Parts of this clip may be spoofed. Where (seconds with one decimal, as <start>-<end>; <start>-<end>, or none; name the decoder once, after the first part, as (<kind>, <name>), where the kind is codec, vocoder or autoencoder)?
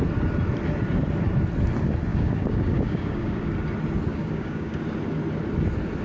2.1-3.4 (codec, DAC); 4.1-4.8